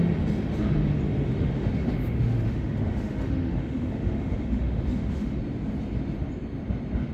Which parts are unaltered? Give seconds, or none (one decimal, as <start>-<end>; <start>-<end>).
0.0-1.3; 5.4-7.1